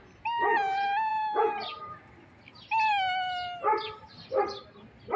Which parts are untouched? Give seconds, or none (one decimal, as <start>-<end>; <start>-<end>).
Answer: 0.0-5.2